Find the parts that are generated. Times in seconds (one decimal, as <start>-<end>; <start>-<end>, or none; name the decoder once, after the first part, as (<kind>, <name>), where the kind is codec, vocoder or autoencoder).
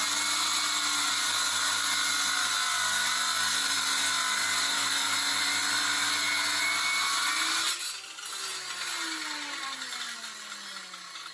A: none